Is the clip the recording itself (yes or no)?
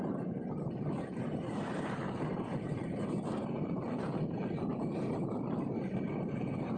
no